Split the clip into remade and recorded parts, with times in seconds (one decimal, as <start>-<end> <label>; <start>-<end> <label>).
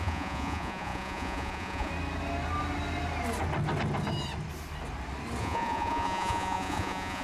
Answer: 0.0-1.9 remade; 1.9-5.4 recorded; 5.4-7.2 remade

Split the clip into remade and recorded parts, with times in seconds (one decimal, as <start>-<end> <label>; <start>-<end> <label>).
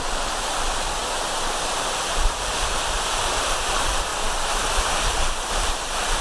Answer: 0.0-6.2 remade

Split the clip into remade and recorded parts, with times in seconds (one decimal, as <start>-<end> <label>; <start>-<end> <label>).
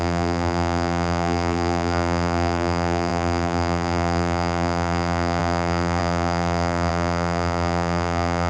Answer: 0.0-8.5 remade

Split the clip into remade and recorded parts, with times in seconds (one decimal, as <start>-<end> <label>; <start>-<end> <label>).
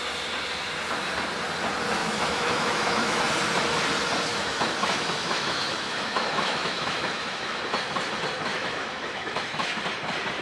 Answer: 0.0-2.0 recorded; 2.0-3.2 remade; 3.2-4.3 recorded; 4.3-7.6 remade; 7.6-8.5 recorded; 8.5-9.8 remade; 9.8-10.4 recorded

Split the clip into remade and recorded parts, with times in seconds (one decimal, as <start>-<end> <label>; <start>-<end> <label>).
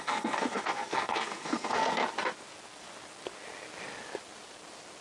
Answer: 0.0-2.0 remade; 2.0-5.0 recorded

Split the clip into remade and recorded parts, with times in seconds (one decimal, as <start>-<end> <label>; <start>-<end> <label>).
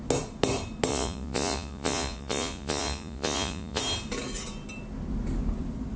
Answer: 0.0-0.9 recorded; 0.9-3.8 remade; 3.8-6.0 recorded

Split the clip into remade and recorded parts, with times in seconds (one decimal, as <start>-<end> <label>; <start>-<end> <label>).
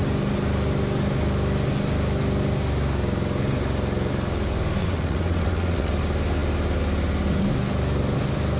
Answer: 0.0-4.8 recorded; 4.8-5.9 remade; 5.9-8.6 recorded